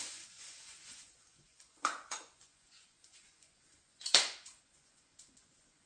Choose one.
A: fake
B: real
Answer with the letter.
A